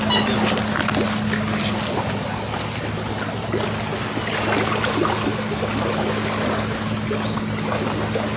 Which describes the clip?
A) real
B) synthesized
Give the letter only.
A